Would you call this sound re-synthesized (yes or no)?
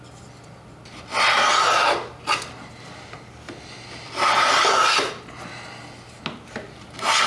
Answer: no